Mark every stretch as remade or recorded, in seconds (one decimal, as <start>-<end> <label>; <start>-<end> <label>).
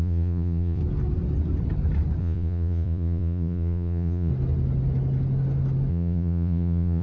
0.0-0.8 remade; 0.8-2.2 recorded; 2.2-4.3 remade; 4.3-5.9 recorded; 5.9-7.0 remade